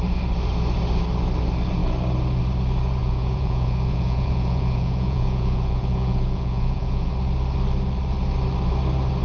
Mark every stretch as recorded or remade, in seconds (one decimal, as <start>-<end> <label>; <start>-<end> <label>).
0.0-3.0 recorded; 3.0-7.1 remade; 7.1-9.2 recorded